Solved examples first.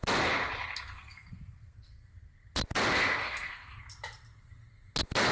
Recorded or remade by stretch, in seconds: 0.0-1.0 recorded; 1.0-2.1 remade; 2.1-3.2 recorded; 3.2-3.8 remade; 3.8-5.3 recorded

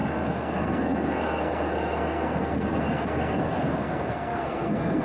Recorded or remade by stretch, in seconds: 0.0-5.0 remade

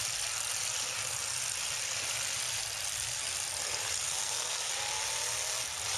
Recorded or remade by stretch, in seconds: 0.0-4.2 recorded; 4.2-4.7 remade; 4.7-6.0 recorded

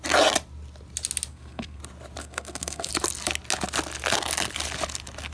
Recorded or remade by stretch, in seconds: 0.0-1.3 recorded; 1.3-1.8 remade; 1.8-2.2 recorded; 2.2-2.9 remade; 2.9-5.3 recorded

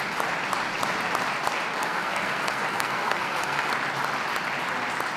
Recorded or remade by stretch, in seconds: 0.0-1.8 recorded; 1.8-3.7 remade; 3.7-5.2 recorded